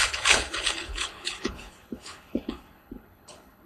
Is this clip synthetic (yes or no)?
yes